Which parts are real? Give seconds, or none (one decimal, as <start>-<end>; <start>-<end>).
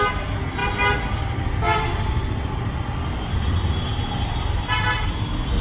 0.0-5.6